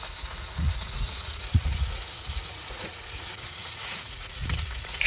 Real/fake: fake